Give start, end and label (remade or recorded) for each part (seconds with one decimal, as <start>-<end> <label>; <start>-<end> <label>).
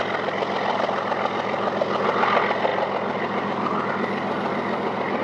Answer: 0.0-5.2 recorded